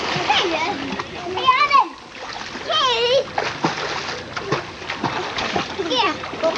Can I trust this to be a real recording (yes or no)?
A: yes